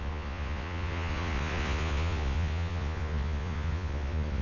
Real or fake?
fake